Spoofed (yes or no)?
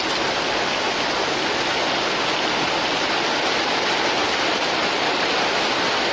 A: no